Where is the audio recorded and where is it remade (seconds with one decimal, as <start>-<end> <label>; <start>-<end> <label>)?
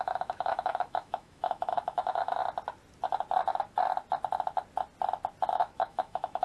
0.0-2.4 remade; 2.4-5.5 recorded; 5.5-6.4 remade